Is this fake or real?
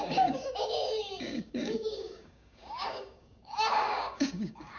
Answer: fake